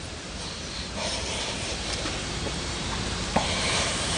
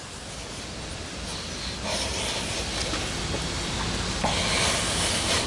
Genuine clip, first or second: second